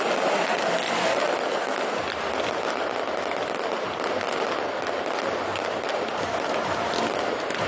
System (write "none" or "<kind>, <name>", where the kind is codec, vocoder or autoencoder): none